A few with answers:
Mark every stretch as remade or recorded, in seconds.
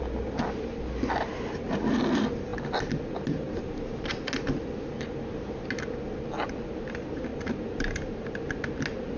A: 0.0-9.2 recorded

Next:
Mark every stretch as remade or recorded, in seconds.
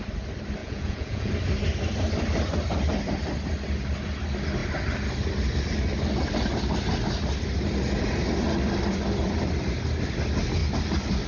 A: 0.0-0.6 recorded; 0.6-1.3 remade; 1.3-11.3 recorded